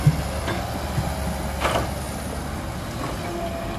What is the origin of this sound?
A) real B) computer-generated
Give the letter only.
A